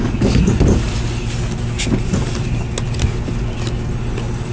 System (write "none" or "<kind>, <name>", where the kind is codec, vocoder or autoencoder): none